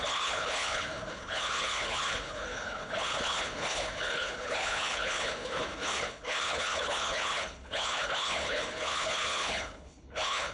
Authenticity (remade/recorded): remade